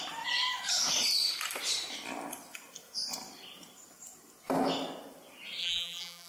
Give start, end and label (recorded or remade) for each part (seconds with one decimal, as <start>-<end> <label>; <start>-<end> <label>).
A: 0.0-5.6 recorded; 5.6-6.3 remade